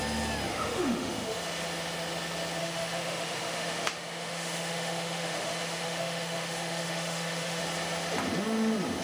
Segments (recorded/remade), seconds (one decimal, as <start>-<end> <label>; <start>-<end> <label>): 0.0-0.5 recorded; 0.5-1.4 remade; 1.4-2.6 recorded; 2.6-7.6 remade; 7.6-9.0 recorded